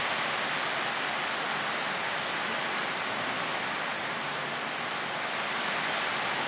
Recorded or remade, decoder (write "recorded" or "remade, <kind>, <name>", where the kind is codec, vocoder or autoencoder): recorded